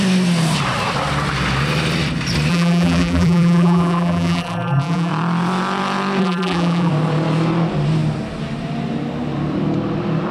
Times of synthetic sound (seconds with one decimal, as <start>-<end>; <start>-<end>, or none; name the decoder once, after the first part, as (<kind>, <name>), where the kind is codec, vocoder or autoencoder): 2.5-5.1 (vocoder, BigVGAN v2); 6.2-6.9